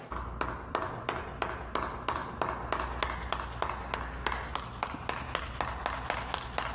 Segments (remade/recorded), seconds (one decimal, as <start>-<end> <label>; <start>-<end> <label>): 0.0-6.7 recorded